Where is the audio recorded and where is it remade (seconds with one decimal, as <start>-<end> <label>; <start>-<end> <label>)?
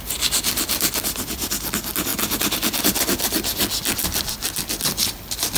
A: 0.0-5.6 recorded